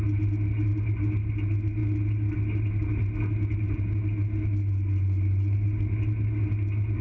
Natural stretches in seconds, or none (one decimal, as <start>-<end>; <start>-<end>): 0.0-7.0